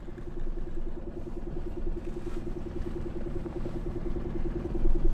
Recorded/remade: recorded